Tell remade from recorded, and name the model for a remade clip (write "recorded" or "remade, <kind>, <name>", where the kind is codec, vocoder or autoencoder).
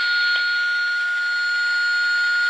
recorded